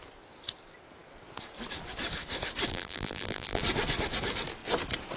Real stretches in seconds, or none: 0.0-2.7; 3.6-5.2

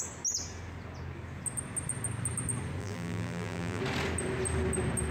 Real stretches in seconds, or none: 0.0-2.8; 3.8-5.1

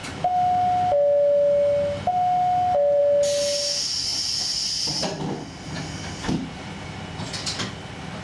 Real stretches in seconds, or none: 0.0-4.1; 7.3-8.2

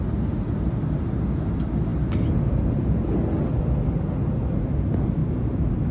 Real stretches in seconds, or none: 0.0-5.9

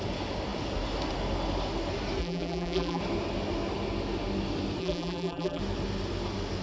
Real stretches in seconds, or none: 0.0-2.2; 3.0-4.8; 5.6-6.6

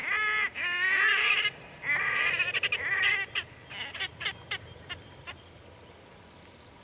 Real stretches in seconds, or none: 4.1-6.8

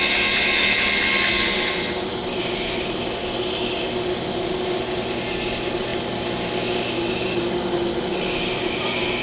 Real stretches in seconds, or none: 0.0-9.2

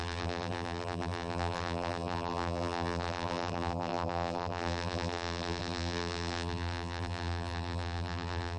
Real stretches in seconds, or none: none